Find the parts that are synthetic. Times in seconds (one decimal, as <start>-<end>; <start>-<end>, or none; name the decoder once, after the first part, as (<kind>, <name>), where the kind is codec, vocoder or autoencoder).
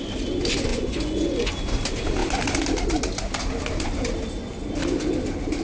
0.7-1.5 (vocoder, Vocos)